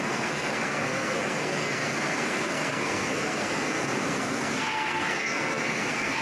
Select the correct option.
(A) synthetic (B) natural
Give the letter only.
A